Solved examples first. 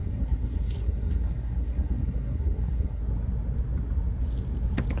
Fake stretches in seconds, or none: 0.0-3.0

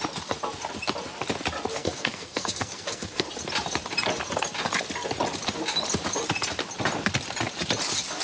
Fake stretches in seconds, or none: 1.7-3.3

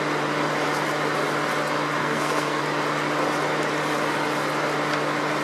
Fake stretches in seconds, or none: 2.0-2.6

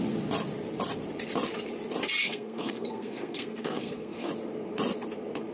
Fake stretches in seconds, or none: 2.2-4.3